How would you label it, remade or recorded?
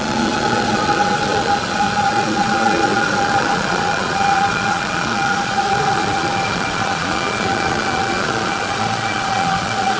remade